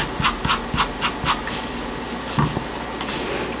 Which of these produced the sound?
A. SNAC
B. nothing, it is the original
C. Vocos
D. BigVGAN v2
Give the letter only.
B